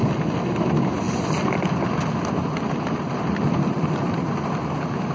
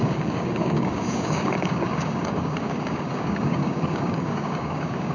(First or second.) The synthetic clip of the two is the second